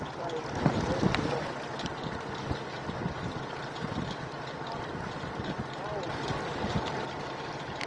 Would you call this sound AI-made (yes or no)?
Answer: no